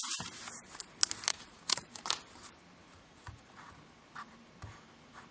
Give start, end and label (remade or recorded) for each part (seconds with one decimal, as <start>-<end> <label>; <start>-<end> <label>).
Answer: 0.0-1.3 recorded; 1.3-1.9 remade; 1.9-2.8 recorded; 2.8-3.6 remade; 3.6-5.3 recorded